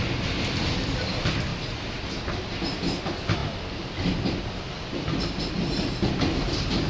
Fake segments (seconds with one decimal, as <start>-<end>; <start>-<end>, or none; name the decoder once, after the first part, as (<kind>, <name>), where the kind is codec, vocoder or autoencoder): none